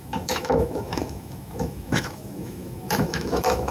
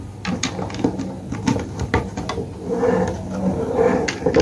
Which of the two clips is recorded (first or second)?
second